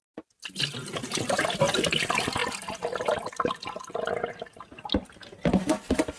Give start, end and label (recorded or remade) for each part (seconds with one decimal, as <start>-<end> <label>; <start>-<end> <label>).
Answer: 0.0-6.2 recorded